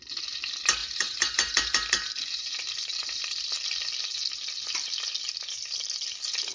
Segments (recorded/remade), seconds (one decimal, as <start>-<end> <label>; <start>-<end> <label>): 0.0-0.8 recorded; 0.8-3.4 remade; 3.4-6.5 recorded